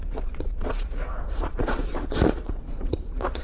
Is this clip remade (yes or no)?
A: yes